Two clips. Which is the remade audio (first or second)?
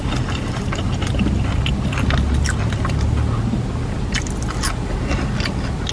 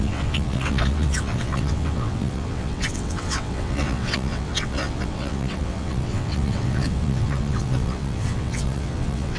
second